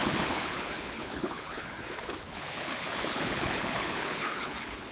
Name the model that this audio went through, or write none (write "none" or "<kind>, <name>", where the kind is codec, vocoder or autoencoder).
codec, HILCodec